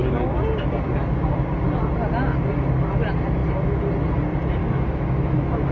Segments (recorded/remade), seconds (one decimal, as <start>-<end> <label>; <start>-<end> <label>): 0.0-4.6 recorded; 4.6-5.7 remade